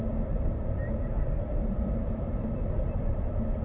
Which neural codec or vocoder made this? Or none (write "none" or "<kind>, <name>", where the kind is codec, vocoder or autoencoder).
none